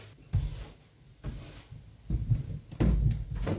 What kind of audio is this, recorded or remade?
recorded